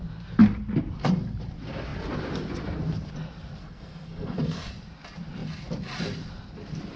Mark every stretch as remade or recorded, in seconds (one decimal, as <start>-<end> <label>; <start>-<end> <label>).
0.0-3.6 recorded; 3.6-4.7 remade; 4.7-7.0 recorded